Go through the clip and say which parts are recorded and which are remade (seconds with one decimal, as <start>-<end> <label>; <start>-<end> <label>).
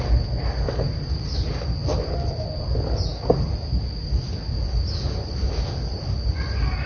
0.0-6.9 recorded